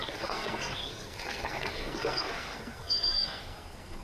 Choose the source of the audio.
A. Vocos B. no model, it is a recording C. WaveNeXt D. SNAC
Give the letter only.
D